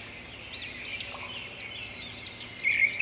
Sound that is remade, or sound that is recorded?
recorded